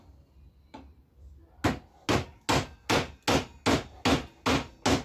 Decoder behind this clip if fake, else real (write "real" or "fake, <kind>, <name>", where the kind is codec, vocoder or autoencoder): real